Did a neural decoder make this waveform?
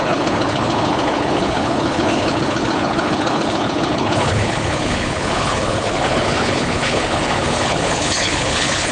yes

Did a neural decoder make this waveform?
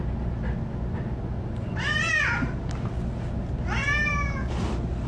no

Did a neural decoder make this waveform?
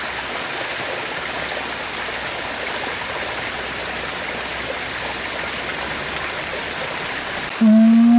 no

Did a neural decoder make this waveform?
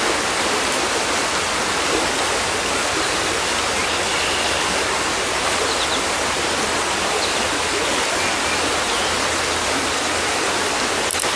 no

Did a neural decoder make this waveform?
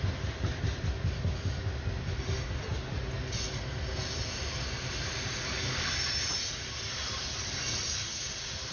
no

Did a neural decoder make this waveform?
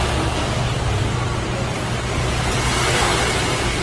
no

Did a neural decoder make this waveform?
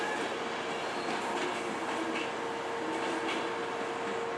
no